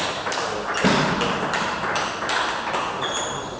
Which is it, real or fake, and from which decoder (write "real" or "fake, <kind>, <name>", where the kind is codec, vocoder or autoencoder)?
real